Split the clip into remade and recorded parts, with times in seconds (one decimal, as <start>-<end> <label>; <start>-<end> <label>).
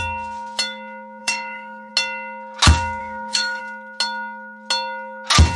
0.0-1.2 recorded; 1.2-1.9 remade; 1.9-3.0 recorded; 3.0-3.6 remade; 3.6-5.6 recorded